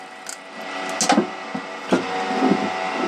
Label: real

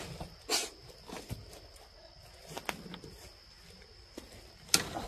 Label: real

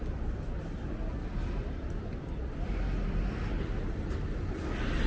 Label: real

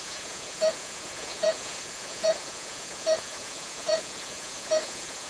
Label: fake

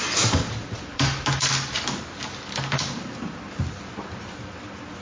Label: real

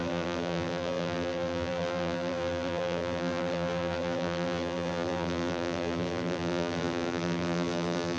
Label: fake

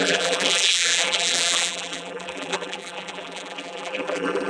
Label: fake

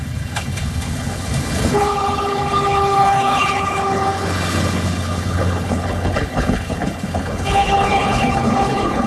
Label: fake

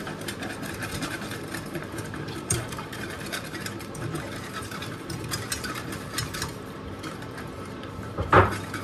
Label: fake